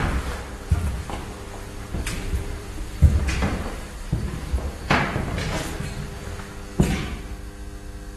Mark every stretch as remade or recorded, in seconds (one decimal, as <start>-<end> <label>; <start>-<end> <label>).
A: 0.0-1.7 recorded; 1.7-4.1 remade; 4.1-8.2 recorded